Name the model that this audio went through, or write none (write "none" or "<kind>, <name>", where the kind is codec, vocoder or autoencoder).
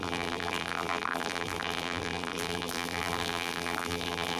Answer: vocoder, BigVGAN v2